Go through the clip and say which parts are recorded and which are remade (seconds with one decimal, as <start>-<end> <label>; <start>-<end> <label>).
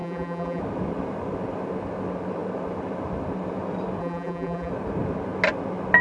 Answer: 0.0-0.6 remade; 0.6-4.0 recorded; 4.0-4.7 remade; 4.7-6.0 recorded